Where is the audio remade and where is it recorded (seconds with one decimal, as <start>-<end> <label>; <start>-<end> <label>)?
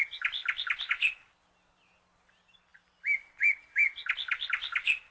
0.0-5.1 recorded